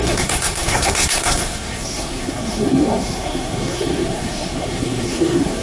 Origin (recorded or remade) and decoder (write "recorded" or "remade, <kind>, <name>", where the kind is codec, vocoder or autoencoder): remade, codec, SNAC